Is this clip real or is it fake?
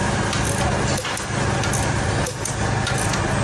real